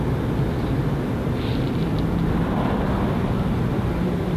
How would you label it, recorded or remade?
recorded